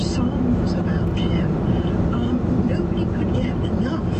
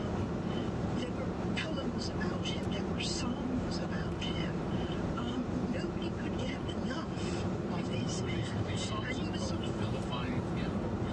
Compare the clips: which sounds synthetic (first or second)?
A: second